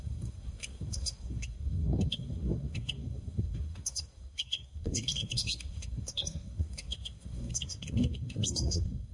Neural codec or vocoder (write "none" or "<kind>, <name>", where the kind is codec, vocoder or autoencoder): codec, SNAC